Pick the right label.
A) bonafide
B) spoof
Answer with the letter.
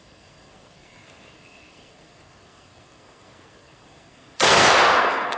B